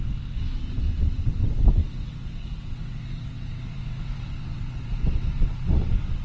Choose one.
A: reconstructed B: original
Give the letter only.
A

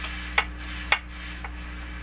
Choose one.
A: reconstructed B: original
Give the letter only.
B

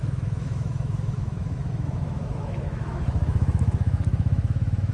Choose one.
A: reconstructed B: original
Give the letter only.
A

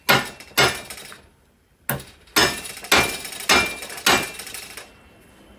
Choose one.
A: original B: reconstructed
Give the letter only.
A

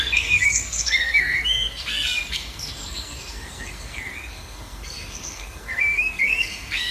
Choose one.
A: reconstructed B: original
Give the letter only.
A